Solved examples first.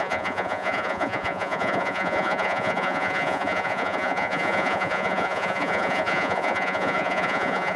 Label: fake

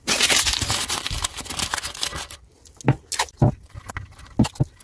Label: real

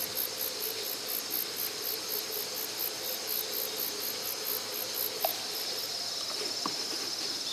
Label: real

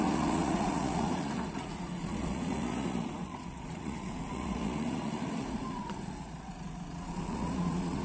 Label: fake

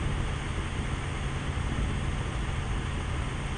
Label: real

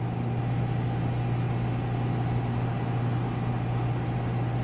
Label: real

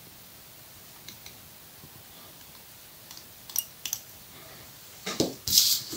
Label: real